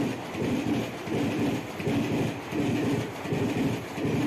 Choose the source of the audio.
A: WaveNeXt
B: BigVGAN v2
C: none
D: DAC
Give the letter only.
C